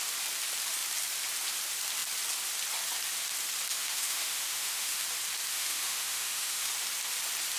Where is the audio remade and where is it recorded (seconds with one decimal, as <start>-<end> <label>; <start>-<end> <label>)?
0.0-3.7 recorded; 3.7-5.0 remade; 5.0-5.5 recorded; 5.5-6.7 remade; 6.7-7.6 recorded